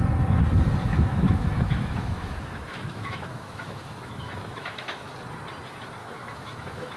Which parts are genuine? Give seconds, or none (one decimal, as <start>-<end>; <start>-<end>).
0.0-0.8; 5.0-6.0